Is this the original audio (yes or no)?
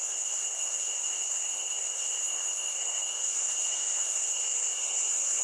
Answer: no